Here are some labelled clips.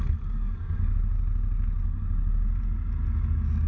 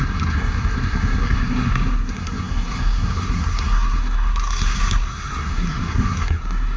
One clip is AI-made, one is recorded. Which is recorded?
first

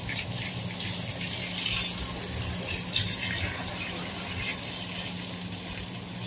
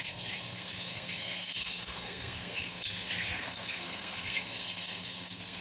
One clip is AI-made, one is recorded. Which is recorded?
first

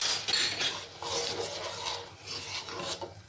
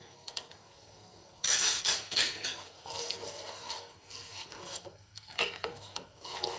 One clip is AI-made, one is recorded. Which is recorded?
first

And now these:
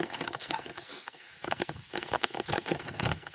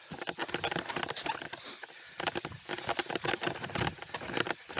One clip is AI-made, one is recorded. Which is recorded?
second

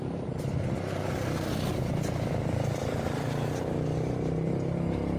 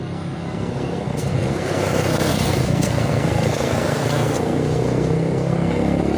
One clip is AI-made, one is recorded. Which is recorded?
first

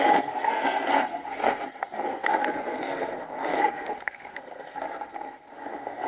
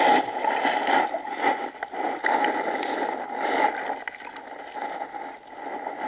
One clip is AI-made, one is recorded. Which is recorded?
second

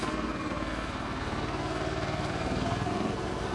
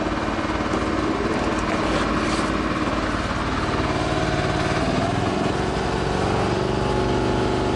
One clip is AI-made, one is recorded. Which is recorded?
second